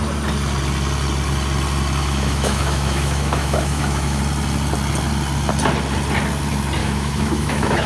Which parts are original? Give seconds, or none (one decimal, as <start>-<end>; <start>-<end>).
0.0-2.0; 4.2-6.8